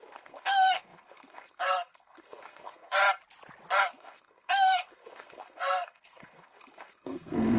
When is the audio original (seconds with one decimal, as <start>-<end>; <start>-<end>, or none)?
3.0-3.8